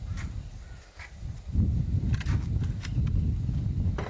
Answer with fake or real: real